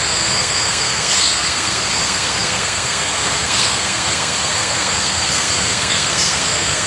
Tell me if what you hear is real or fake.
fake